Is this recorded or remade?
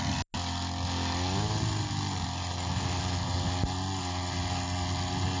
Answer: recorded